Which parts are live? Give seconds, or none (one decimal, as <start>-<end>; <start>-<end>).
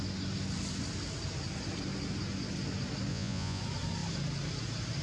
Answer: 0.0-3.1; 3.6-5.0